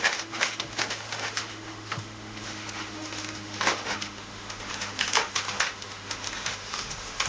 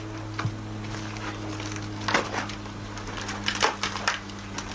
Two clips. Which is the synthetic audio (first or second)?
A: first